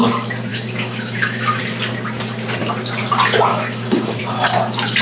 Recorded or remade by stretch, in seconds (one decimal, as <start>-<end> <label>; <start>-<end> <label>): 0.0-0.5 recorded; 0.5-1.6 remade; 1.6-3.5 recorded; 3.5-4.2 remade; 4.2-5.0 recorded

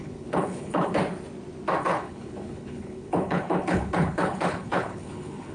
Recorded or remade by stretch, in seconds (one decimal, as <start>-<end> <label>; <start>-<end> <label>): 0.0-1.0 remade; 1.0-1.8 recorded; 1.8-5.5 remade